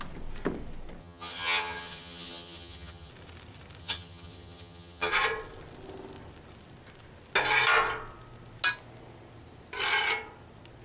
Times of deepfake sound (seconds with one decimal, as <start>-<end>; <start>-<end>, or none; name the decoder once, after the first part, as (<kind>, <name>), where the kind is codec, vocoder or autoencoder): 1.0-3.1 (vocoder, HiFi-GAN); 3.8-5.1